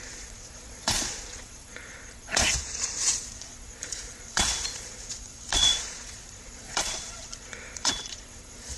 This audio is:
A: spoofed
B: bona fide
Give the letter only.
A